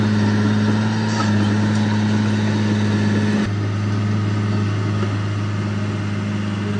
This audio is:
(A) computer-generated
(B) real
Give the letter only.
B